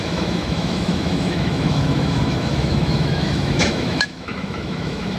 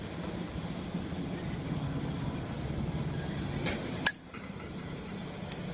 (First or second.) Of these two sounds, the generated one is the first